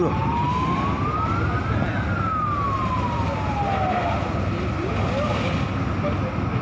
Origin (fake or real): real